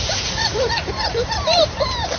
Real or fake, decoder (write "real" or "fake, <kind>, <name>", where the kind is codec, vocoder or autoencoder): fake, vocoder, BigVGAN v2